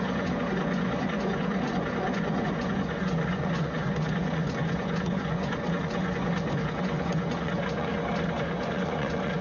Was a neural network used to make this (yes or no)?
yes